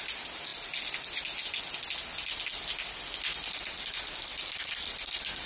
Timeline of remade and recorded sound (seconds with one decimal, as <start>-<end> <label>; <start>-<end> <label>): 0.0-5.5 recorded